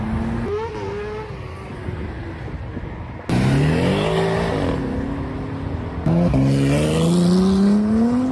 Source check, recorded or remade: recorded